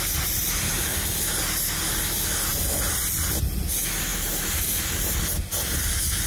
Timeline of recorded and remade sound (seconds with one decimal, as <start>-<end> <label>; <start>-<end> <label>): 0.0-4.1 recorded; 4.1-5.2 remade; 5.2-6.3 recorded